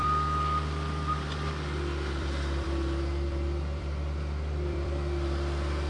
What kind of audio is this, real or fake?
fake